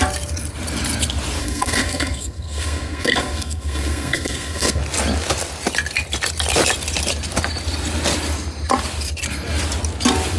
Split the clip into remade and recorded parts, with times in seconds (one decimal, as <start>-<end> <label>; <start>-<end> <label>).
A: 0.0-1.4 recorded; 1.4-4.8 remade; 4.8-10.4 recorded